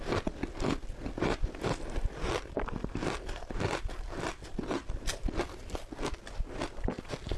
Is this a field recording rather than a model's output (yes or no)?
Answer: no